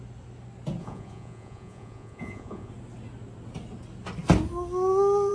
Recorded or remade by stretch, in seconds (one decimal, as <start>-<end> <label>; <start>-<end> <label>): 0.0-0.8 recorded; 0.8-2.7 remade; 2.7-5.3 recorded